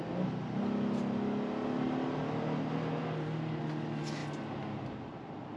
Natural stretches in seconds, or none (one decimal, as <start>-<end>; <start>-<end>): 0.0-5.6